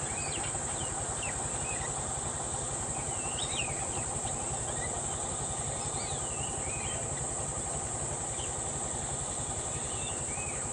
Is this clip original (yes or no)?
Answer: yes